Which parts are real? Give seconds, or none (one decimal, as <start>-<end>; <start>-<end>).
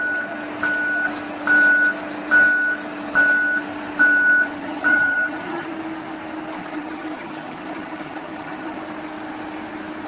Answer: 0.0-4.6; 5.7-6.6; 8.8-10.1